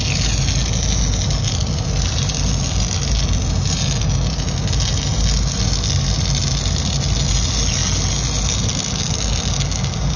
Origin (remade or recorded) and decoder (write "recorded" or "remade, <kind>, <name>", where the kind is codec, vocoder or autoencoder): recorded